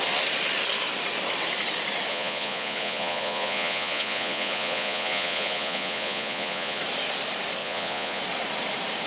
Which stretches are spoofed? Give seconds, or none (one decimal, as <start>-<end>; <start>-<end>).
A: 2.1-6.8; 7.6-8.2